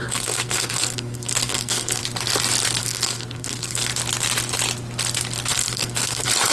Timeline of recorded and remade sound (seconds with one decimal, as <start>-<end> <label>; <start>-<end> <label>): 0.0-2.0 remade; 2.0-2.8 recorded; 2.8-3.9 remade; 3.9-5.5 recorded; 5.5-6.5 remade